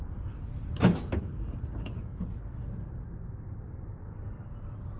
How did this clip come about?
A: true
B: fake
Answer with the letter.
A